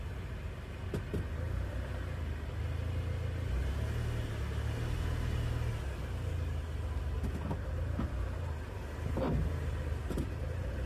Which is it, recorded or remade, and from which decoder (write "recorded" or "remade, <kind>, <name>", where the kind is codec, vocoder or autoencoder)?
recorded